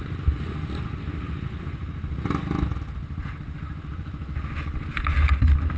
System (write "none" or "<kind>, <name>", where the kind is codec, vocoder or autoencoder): none